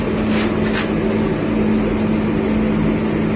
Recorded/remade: recorded